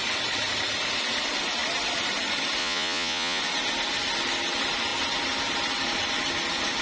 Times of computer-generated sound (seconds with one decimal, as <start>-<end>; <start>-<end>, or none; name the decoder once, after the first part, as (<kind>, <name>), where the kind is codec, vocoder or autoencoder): 2.6-3.4 (vocoder, Vocos)